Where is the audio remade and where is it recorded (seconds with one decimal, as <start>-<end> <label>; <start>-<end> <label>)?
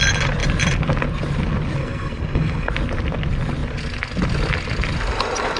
0.0-1.8 recorded; 1.8-2.7 remade; 2.7-5.6 recorded